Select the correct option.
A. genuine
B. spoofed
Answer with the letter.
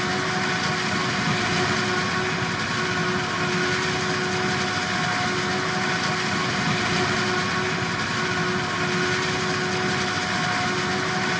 A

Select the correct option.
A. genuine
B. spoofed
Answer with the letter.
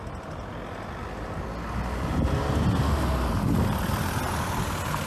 A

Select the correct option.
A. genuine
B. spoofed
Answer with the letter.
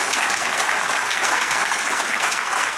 B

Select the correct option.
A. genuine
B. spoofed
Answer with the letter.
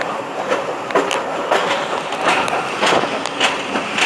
A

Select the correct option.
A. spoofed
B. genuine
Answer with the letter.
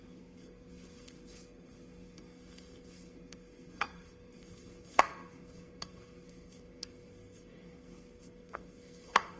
A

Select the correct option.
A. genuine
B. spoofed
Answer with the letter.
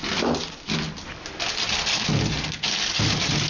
A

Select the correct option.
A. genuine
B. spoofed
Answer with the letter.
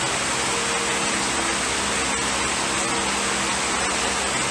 A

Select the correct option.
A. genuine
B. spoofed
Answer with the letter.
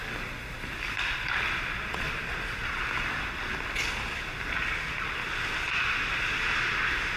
A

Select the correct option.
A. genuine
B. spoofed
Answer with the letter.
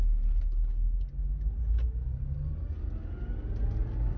A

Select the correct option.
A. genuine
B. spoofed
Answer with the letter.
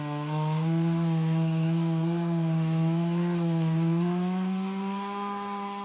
B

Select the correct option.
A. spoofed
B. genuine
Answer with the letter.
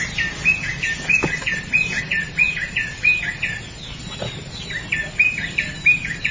B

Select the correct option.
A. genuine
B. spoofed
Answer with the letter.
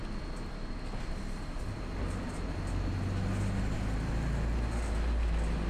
A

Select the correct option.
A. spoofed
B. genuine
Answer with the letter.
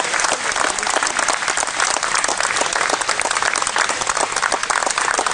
B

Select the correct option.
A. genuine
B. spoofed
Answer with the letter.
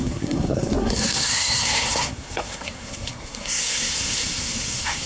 B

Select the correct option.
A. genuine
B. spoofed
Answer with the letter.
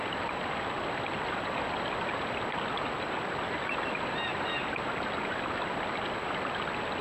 A